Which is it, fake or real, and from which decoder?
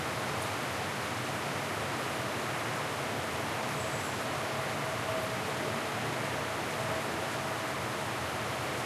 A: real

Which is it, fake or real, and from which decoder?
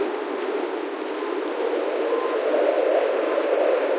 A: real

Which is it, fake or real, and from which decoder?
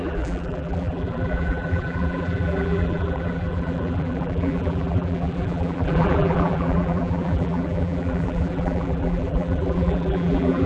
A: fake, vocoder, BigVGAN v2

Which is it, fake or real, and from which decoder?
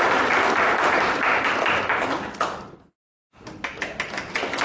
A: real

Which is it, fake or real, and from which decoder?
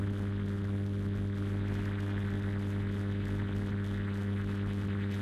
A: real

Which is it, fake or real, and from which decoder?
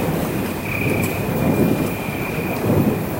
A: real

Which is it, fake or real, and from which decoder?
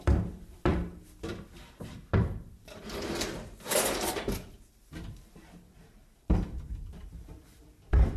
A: fake, vocoder, BigVGAN v2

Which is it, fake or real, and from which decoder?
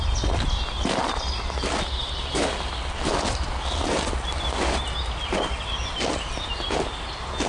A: real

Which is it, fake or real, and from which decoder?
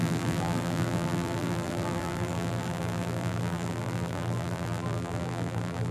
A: fake, vocoder, BigVGAN v2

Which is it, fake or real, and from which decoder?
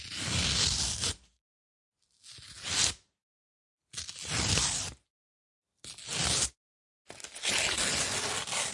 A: real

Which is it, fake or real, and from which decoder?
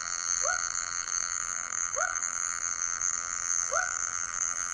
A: fake, vocoder, BigVGAN v2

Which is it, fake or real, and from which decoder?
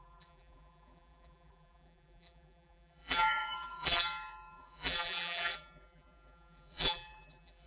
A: fake, vocoder, BigVGAN v2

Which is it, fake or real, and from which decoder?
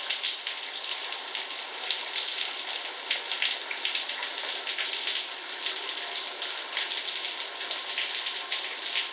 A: real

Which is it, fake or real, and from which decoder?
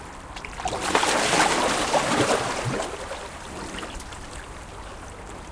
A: real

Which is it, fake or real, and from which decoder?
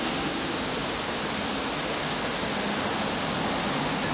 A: real